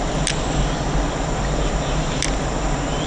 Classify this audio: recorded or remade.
recorded